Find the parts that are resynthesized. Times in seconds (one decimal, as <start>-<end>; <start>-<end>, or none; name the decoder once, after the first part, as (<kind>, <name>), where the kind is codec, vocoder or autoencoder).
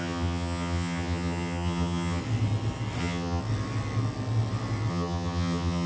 0.0-2.2 (vocoder, HiFi-GAN); 3.0-3.4; 4.9-5.9